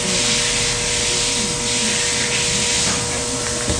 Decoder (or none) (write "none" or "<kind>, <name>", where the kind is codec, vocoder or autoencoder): none